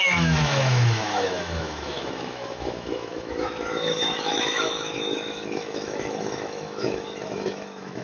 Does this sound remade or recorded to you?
remade